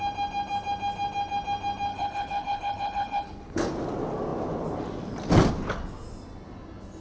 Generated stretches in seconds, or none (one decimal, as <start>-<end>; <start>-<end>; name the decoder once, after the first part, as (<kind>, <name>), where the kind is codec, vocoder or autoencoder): 1.9-3.7 (codec, HILCodec)